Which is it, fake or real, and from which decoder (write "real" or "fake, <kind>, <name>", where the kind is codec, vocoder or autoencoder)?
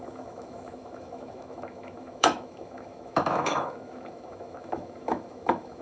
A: fake, autoencoder, DAC-VAE